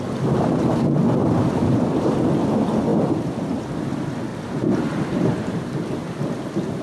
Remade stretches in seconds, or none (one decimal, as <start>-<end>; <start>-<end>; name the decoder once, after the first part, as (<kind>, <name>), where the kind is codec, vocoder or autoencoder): 1.2-2.1 (vocoder, BigVGAN v2); 4.3-6.1